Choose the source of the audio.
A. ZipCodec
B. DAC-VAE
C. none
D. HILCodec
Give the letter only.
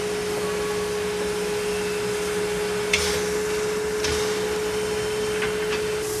C